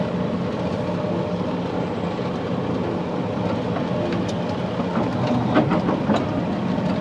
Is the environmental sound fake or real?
real